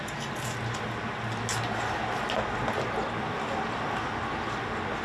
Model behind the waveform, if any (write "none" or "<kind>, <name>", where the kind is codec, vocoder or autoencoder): none